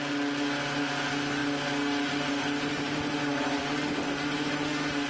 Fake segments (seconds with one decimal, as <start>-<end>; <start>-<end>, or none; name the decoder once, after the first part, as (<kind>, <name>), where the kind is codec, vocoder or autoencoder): none